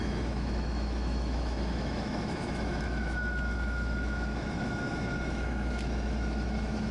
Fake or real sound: fake